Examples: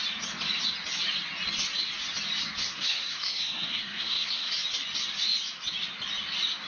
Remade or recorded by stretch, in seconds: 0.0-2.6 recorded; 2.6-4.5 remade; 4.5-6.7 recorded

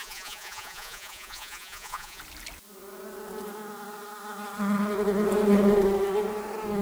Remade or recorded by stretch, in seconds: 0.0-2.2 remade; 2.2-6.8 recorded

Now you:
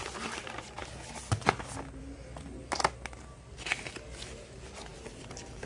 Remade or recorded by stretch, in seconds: 0.0-5.7 recorded

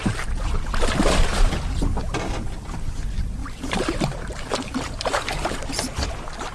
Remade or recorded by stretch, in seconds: 0.0-0.7 remade; 0.7-3.4 recorded; 3.4-5.9 remade; 5.9-6.5 recorded